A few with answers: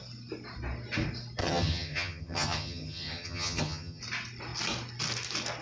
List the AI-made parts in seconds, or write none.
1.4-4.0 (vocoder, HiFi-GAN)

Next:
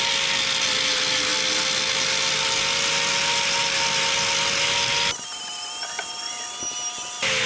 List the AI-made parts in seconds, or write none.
none

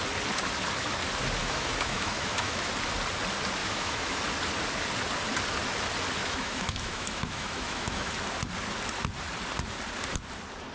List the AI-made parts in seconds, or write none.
1.4-2.7 (autoencoder, DAC-VAE); 3.6-4.2; 6.2-8.1

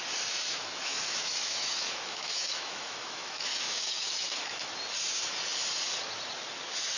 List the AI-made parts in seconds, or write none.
0.5-4.7 (autoencoder, DAC-VAE)

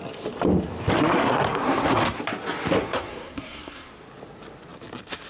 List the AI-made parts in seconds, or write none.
1.0-2.2 (codec, SNAC); 2.8-3.9

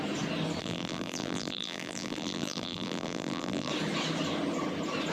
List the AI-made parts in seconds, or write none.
0.6-3.7 (vocoder, BigVGAN v2)